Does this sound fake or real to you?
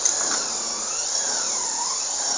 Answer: real